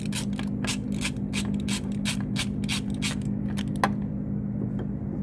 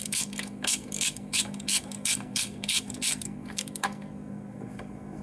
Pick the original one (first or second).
first